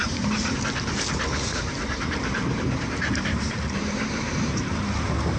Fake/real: fake